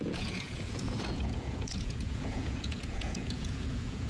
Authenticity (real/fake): fake